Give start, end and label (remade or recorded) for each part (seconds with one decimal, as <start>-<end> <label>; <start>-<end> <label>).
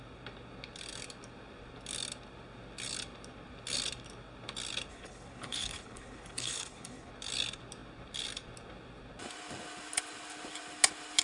0.0-4.9 recorded; 4.9-7.1 remade; 7.1-11.2 recorded